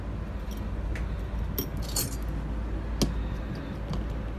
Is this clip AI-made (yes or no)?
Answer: no